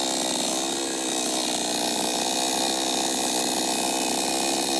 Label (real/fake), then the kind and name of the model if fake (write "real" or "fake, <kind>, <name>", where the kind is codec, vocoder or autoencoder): real